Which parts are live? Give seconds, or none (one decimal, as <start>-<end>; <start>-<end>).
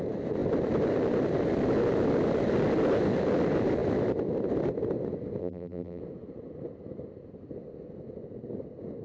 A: 0.0-5.4; 6.0-9.0